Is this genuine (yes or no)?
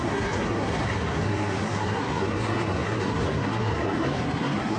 no